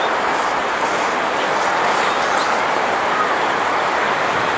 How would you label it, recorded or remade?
recorded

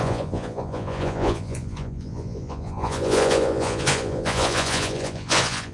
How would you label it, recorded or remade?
remade